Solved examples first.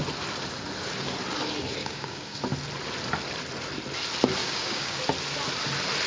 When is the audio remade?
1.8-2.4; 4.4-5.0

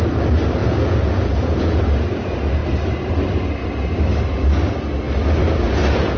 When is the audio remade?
0.6-1.8

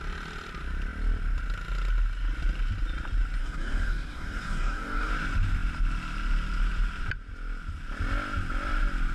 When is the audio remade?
3.4-5.1

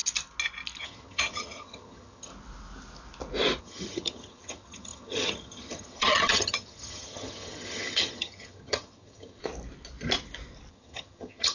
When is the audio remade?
0.8-2.3; 3.6-9.4; 10.7-11.5

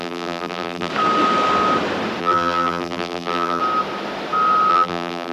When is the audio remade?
0.0-0.9; 2.2-3.6; 4.7-5.3

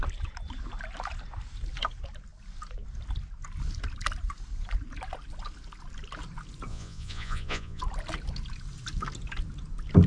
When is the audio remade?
6.7-7.8